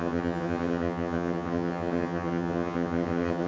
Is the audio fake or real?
fake